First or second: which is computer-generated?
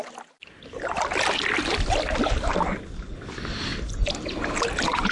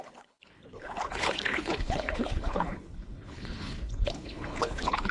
second